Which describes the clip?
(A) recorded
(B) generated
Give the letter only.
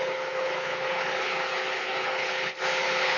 B